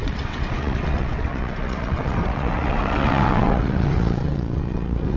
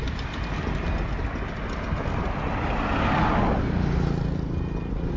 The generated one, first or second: first